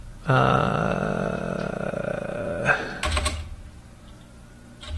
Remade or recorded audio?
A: recorded